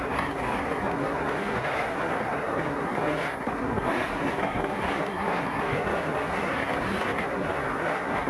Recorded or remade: remade